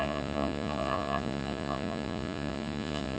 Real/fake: fake